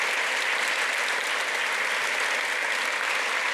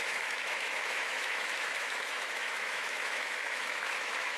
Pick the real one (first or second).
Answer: first